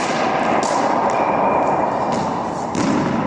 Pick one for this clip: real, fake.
real